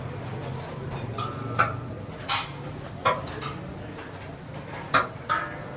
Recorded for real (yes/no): yes